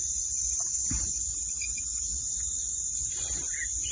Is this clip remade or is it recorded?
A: remade